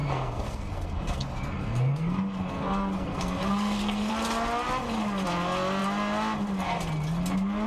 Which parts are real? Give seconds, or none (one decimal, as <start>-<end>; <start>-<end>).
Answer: 4.1-7.7